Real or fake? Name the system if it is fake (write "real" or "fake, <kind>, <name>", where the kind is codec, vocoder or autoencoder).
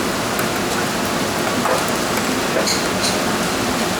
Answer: real